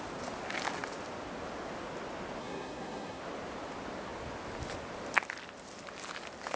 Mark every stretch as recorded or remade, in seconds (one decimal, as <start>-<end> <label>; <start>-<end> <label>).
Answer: 0.0-2.4 recorded; 2.4-3.2 remade; 3.2-6.6 recorded